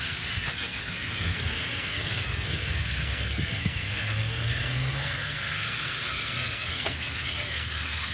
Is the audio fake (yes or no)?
yes